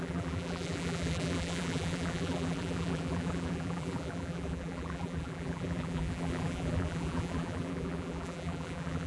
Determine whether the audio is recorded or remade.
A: remade